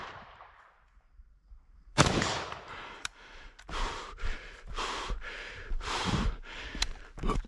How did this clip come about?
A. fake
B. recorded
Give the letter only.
A